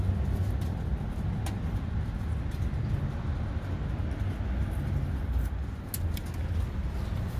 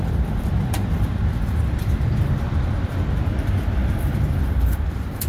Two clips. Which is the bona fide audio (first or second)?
first